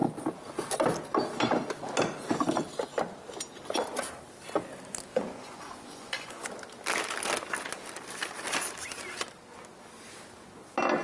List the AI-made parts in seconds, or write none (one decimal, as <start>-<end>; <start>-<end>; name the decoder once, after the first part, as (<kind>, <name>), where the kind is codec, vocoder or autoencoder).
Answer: 5.1-6.5 (vocoder, Vocos)